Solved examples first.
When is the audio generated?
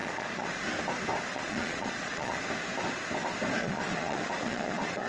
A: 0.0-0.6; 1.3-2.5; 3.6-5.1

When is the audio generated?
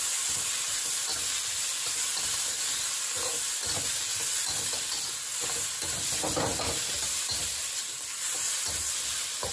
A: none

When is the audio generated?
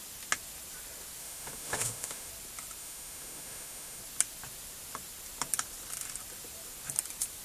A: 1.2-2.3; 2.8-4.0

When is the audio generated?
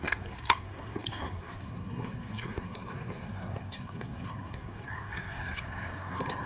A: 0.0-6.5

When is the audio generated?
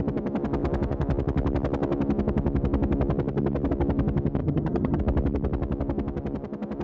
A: 4.4-5.0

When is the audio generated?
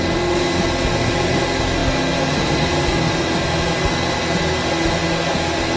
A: none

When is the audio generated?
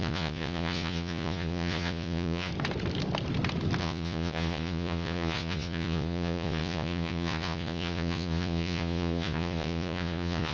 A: 0.0-2.5; 3.8-10.5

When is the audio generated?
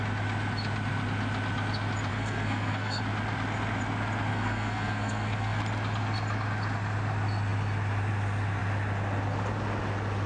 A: 2.1-3.0; 4.3-5.6